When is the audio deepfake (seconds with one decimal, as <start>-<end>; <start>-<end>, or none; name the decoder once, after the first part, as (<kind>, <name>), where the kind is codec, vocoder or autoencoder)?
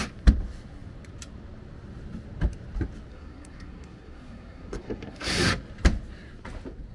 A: 3.1-5.5 (codec, SNAC)